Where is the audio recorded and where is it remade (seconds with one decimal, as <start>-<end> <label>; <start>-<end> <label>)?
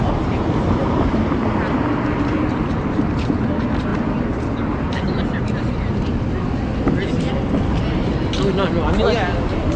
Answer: 0.0-9.8 recorded